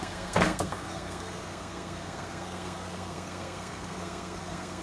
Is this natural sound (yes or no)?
no